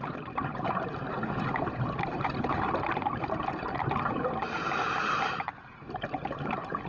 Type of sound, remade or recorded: remade